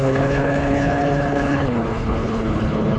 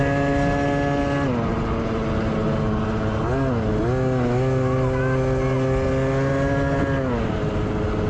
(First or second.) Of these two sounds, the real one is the second